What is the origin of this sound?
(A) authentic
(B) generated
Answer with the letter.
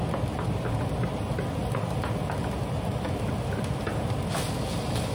A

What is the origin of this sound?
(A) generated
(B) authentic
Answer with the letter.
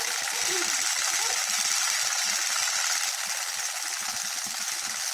B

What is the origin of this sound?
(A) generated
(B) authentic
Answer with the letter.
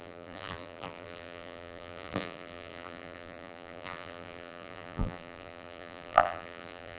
A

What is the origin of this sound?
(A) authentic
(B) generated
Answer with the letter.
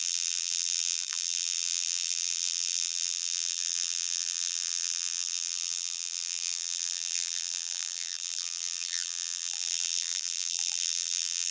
B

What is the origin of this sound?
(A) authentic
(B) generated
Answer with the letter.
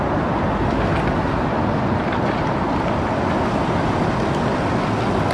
A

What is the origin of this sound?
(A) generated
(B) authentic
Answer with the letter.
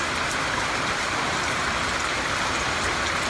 B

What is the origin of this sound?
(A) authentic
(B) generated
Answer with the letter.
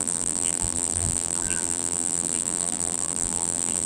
B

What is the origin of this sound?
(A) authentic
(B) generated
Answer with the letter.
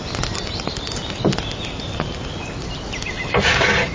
A